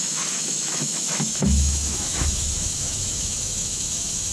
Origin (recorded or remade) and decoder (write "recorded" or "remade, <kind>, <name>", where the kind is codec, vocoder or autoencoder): remade, autoencoder, DAC-VAE